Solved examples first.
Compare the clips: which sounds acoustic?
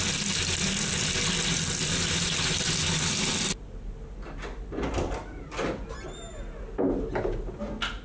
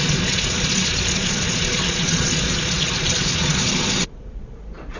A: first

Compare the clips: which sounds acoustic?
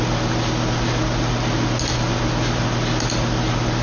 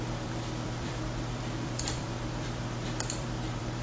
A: first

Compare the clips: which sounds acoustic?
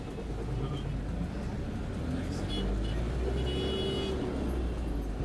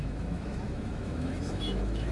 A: first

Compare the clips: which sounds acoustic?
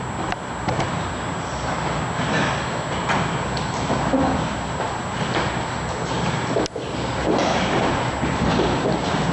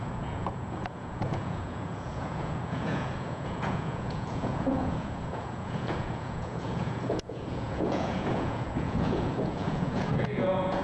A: first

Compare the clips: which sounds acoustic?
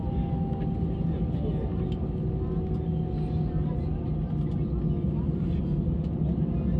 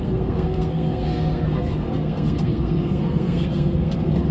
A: first